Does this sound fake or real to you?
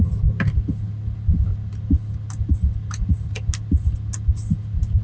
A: real